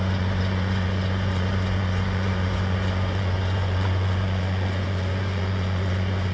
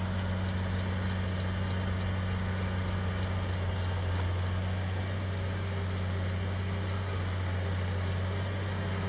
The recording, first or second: second